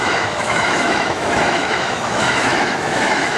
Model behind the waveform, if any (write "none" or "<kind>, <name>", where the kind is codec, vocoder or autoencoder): autoencoder, DAC-VAE